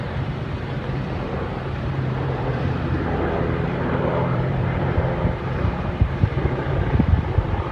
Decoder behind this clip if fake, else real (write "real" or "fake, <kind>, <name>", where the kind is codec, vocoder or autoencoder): fake, vocoder, BigVGAN v2